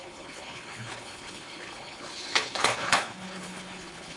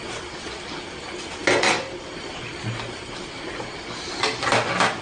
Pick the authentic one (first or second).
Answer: second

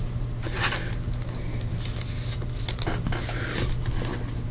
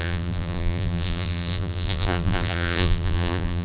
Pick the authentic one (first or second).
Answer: first